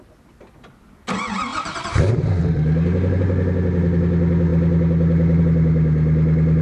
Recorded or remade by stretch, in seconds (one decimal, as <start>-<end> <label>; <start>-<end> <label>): 0.0-1.5 recorded; 1.5-2.0 remade; 2.0-6.6 recorded